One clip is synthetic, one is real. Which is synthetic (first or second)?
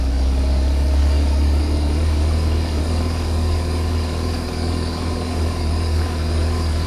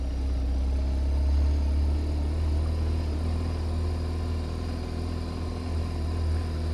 first